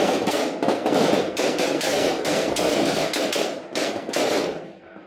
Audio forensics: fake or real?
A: fake